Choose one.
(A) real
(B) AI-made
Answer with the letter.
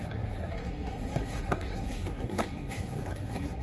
B